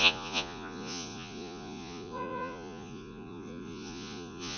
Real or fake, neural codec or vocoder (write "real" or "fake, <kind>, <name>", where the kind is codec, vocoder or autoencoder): fake, vocoder, Vocos